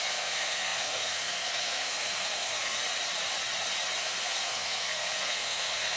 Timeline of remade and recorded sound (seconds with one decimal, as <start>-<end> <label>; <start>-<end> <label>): 0.0-2.8 remade; 2.8-4.0 recorded; 4.0-6.0 remade